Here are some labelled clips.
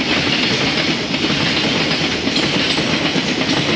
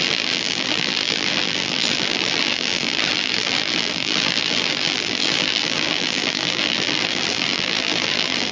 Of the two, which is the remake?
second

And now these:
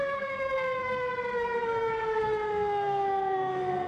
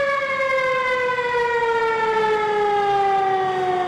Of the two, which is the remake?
first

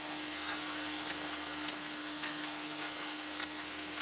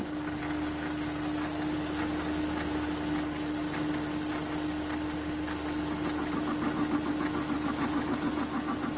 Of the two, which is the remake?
first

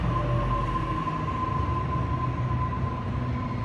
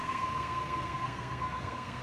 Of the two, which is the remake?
second